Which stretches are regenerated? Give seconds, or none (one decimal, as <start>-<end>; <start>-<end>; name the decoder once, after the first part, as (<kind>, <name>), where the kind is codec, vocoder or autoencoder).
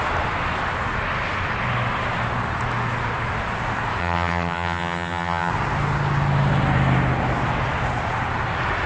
4.0-5.5 (vocoder, HiFi-GAN)